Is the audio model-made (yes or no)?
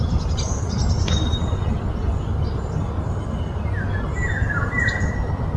no